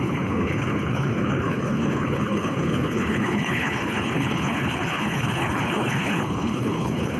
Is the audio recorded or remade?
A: remade